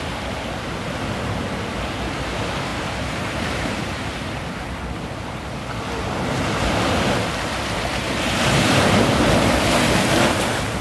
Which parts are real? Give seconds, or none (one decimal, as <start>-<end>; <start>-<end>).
0.0-2.7; 4.4-10.8